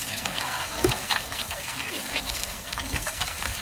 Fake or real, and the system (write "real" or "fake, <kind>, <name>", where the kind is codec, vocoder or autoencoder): fake, codec, SNAC